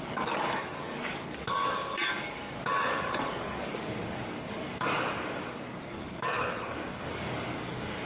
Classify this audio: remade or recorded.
remade